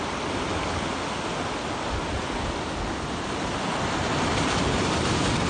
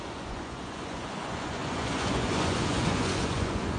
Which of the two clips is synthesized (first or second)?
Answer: second